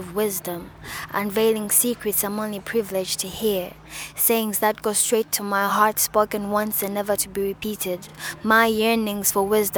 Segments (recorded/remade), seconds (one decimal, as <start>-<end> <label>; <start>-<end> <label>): 0.0-4.1 recorded; 4.1-5.7 remade; 5.7-8.1 recorded; 8.1-9.3 remade; 9.3-9.8 recorded